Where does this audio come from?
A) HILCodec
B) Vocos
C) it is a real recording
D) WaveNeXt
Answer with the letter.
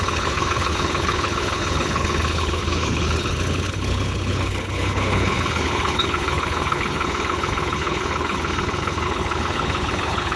A